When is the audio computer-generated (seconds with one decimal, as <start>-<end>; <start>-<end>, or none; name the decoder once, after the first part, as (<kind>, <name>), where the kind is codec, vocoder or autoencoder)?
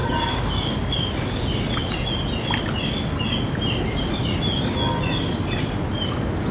0.0-1.4 (codec, DAC)